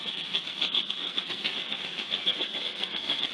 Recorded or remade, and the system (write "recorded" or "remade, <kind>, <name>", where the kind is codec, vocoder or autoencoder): remade, codec, SNAC